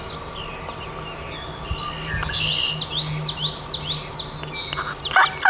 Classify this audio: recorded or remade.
recorded